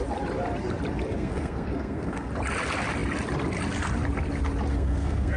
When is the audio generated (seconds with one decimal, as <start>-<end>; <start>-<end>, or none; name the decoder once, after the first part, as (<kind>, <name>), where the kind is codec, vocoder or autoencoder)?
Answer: 1.1-2.3 (codec, SNAC); 4.7-5.4